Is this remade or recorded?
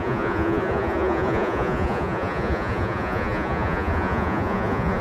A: remade